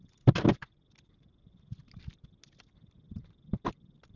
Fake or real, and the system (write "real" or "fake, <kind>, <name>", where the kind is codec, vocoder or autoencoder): real